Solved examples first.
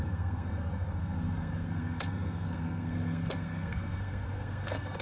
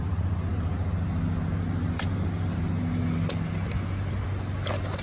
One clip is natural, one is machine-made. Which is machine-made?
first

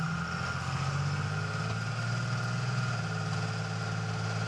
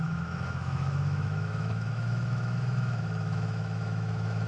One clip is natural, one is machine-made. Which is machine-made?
second